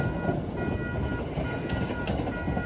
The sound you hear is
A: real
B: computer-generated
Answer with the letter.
A